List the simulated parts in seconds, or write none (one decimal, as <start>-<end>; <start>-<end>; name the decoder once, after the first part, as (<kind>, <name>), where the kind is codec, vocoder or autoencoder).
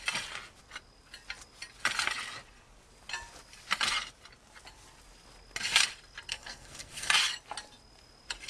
6.3-7.1 (codec, SNAC)